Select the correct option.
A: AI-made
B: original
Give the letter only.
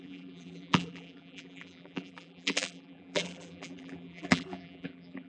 A